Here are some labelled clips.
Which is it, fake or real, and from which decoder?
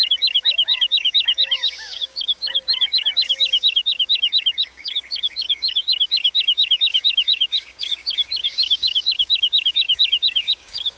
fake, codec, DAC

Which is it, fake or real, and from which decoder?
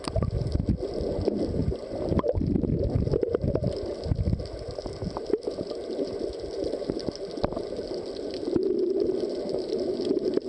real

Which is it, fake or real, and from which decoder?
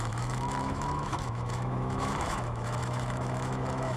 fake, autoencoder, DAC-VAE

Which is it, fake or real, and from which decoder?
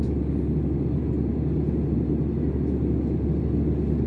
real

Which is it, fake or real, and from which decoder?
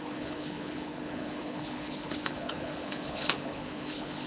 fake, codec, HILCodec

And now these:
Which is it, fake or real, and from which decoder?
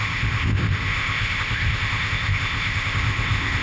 fake, codec, ZipCodec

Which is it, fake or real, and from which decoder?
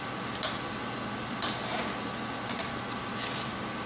real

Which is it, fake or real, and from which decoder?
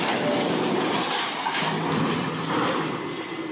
real